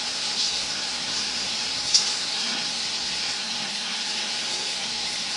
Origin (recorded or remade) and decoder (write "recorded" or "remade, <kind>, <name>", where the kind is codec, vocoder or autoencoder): remade, codec, SNAC